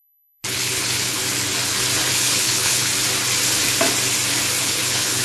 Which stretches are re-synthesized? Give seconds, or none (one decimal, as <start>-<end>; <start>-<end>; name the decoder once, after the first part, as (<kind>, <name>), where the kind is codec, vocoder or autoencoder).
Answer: 0.0-1.2 (codec, HILCodec); 2.1-2.9; 4.6-5.2